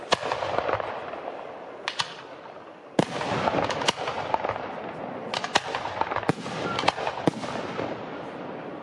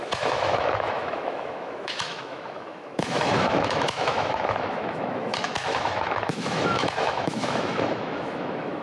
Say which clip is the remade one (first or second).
second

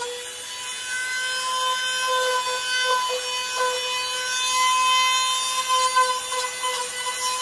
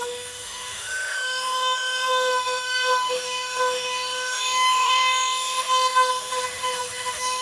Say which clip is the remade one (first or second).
second